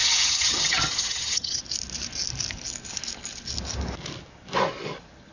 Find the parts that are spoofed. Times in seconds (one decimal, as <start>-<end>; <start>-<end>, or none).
0.0-1.6